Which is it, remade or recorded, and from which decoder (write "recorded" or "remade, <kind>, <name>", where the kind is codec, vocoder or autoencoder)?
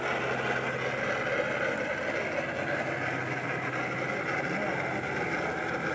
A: recorded